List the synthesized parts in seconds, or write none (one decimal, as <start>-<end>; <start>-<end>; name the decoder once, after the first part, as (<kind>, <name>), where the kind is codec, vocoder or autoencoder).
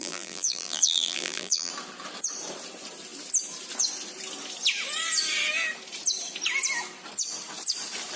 0.0-1.7 (vocoder, BigVGAN v2)